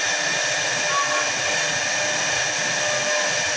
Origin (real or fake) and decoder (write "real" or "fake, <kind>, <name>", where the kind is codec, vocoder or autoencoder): real